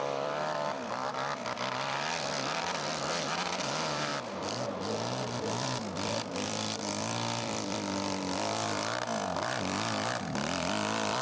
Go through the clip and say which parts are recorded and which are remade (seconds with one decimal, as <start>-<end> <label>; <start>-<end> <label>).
0.0-4.1 remade; 4.1-5.4 recorded; 5.4-11.2 remade